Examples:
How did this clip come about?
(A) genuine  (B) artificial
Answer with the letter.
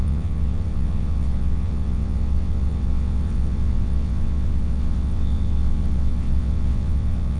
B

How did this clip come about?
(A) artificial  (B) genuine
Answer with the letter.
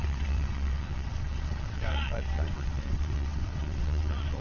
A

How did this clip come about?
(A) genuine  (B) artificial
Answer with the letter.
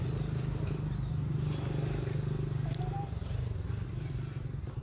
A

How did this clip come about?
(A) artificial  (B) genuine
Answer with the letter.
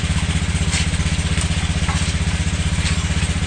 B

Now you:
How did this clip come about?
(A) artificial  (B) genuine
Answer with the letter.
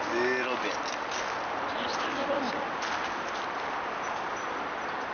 B